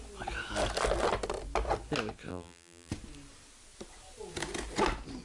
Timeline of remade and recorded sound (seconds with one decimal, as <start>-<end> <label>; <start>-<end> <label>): 0.0-2.3 recorded; 2.3-2.9 remade; 2.9-5.2 recorded